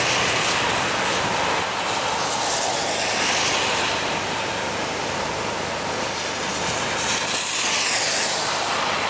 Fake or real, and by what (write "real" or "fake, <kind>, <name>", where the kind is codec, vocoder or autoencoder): real